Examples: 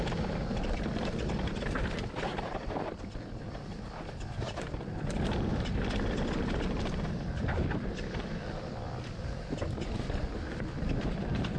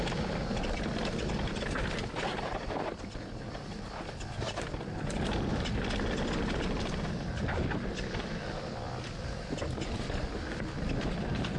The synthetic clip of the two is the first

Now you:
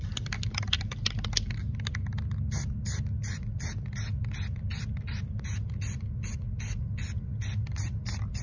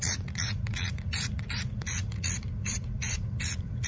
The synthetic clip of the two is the second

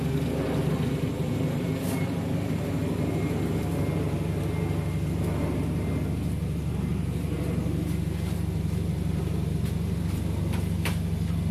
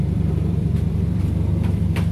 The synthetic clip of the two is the second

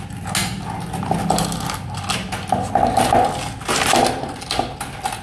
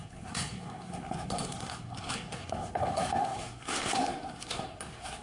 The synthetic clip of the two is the second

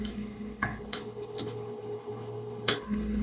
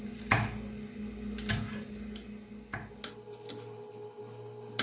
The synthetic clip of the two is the first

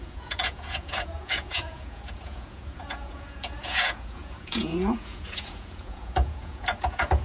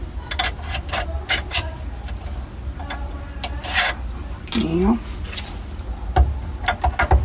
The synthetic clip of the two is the first